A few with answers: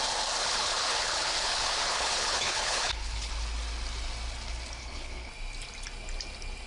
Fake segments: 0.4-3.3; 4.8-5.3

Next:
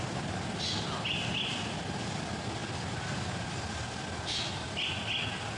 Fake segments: none